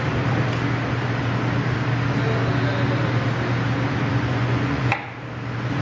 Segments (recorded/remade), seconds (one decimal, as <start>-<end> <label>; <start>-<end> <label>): 0.0-4.1 recorded; 4.1-4.9 remade; 4.9-5.8 recorded